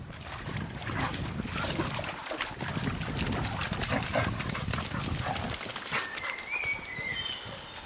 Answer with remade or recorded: recorded